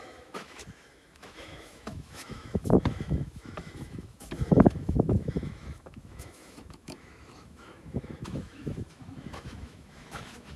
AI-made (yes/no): yes